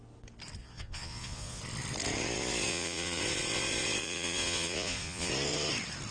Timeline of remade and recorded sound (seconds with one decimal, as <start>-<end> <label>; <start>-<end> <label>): 0.0-0.6 recorded; 0.6-1.6 remade; 1.6-2.7 recorded; 2.7-3.2 remade; 3.2-4.0 recorded; 4.0-5.3 remade; 5.3-6.1 recorded